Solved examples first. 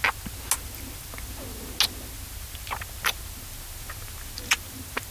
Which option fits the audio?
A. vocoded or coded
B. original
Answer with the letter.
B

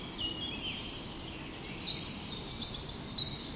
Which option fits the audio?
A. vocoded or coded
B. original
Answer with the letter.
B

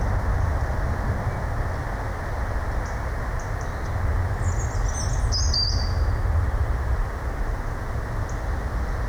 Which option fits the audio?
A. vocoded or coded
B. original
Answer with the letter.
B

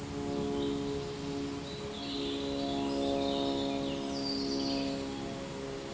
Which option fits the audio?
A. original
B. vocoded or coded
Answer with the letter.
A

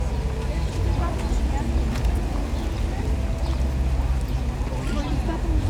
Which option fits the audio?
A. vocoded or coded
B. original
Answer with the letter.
B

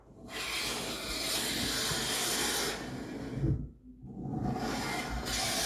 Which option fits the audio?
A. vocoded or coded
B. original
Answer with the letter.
B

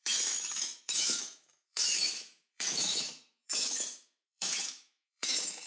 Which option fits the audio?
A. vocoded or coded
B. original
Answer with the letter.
A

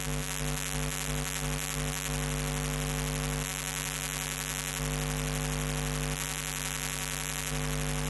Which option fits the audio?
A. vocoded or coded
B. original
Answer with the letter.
B